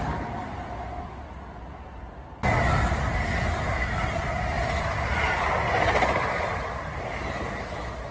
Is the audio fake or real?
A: real